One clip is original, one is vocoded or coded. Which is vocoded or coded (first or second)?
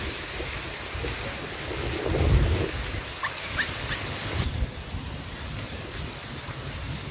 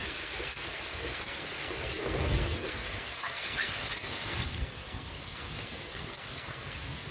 second